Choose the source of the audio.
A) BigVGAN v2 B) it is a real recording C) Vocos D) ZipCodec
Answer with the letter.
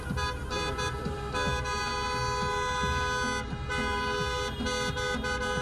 B